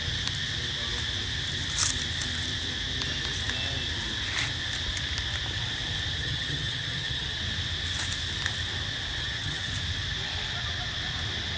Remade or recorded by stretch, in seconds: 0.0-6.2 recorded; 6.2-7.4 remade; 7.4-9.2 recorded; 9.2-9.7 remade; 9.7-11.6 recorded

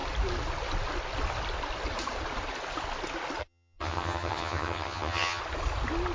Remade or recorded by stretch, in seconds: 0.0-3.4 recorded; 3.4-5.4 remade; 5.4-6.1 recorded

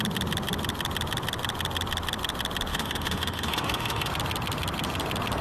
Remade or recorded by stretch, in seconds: 0.0-2.7 recorded; 2.7-4.1 remade; 4.1-5.4 recorded

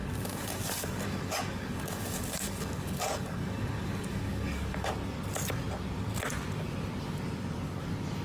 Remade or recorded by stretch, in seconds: 0.0-4.9 remade; 4.9-8.2 recorded